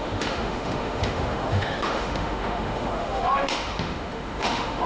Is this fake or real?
fake